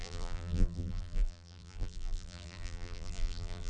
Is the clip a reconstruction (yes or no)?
yes